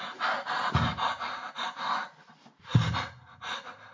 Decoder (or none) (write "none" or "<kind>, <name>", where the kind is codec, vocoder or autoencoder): none